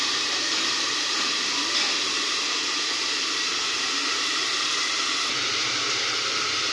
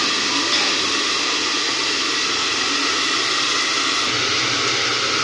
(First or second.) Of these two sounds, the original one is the second